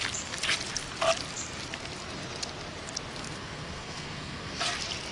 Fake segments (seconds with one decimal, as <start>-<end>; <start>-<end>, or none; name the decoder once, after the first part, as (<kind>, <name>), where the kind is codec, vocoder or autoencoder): 3.2-4.6 (codec, SNAC)